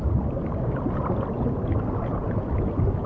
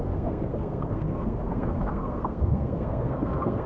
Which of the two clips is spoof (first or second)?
second